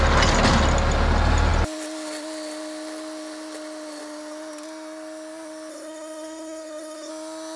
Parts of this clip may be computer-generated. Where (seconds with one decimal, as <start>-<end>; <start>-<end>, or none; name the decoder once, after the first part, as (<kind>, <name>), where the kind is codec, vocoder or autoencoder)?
5.7-7.1 (codec, SNAC)